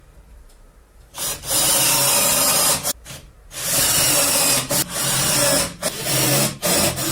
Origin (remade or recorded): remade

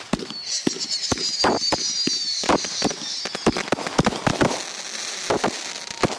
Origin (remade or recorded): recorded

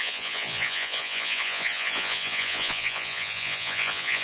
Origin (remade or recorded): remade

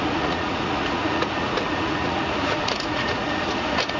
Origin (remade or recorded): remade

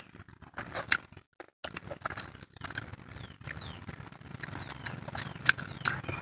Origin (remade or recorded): recorded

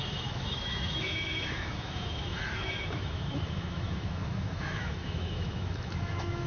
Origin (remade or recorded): remade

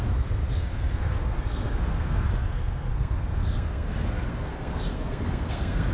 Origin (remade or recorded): remade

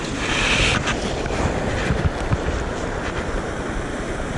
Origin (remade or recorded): recorded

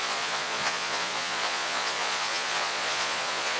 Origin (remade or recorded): remade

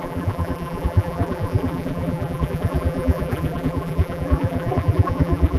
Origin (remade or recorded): remade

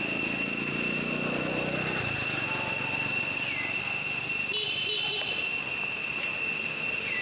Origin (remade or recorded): recorded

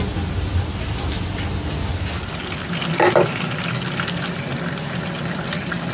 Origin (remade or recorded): recorded